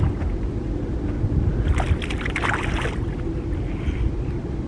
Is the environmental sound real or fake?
real